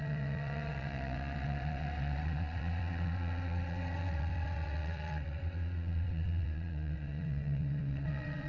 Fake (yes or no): yes